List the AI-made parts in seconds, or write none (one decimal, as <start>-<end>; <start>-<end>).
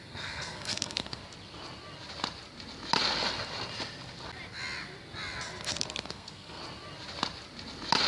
0.0-1.2; 6.1-6.6